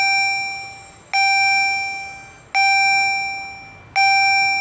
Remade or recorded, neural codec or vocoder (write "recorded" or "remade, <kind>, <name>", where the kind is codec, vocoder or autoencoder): recorded